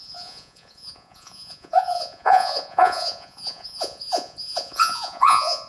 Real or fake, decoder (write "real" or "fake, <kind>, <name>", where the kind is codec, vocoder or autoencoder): fake, vocoder, Vocos